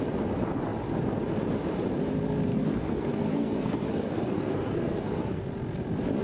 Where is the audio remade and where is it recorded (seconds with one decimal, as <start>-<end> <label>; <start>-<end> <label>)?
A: 0.0-2.5 recorded; 2.5-5.4 remade; 5.4-6.2 recorded